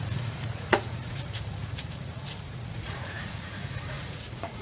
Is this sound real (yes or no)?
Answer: no